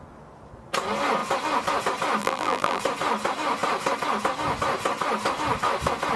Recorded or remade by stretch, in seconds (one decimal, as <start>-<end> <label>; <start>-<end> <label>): 0.0-2.2 recorded; 2.2-2.8 remade; 2.8-6.2 recorded